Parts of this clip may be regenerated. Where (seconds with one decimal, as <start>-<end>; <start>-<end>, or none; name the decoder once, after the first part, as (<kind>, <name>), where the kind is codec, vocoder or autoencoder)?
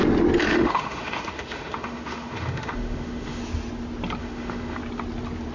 0.5-3.4 (autoencoder, DAC-VAE); 4.2-4.8